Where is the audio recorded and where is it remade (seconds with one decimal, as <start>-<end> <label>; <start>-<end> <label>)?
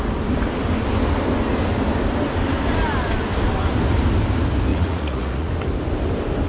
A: 0.0-4.7 recorded; 4.7-5.5 remade; 5.5-6.5 recorded